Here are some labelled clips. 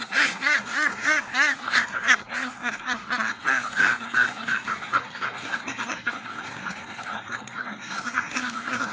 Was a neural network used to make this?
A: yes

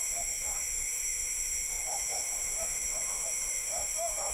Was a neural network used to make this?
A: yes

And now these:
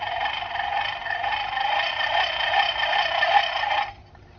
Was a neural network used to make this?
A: no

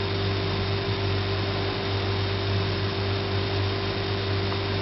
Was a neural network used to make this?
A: no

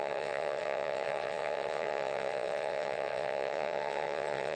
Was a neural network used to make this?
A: yes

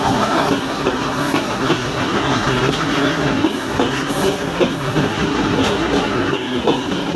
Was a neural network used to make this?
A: yes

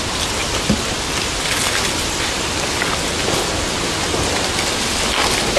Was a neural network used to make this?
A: no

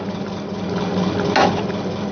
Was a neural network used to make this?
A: no